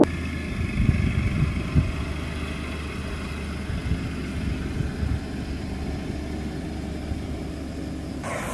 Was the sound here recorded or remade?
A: recorded